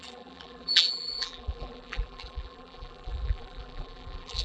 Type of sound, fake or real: fake